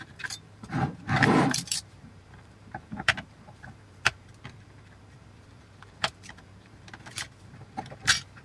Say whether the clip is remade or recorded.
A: remade